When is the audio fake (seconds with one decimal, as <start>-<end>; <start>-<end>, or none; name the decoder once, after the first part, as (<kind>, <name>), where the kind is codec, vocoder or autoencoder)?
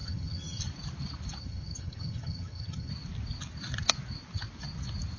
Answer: 0.0-0.6 (vocoder, HiFi-GAN); 1.4-2.9